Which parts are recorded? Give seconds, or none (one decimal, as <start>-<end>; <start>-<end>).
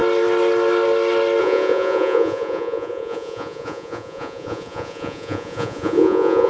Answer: 0.0-1.4